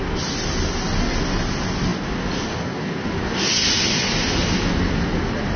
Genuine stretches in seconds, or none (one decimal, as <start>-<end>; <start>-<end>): 0.0-5.6